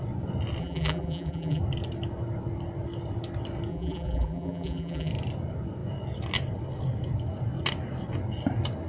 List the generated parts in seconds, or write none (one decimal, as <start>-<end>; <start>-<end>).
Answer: 0.6-1.6; 3.7-5.1